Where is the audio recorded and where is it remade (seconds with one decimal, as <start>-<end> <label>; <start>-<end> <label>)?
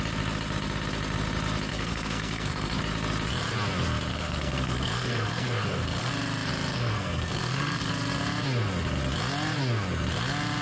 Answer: 0.0-1.7 recorded; 1.7-2.8 remade; 2.8-4.1 recorded; 4.1-6.1 remade; 6.1-6.7 recorded; 6.7-7.9 remade; 7.9-10.6 recorded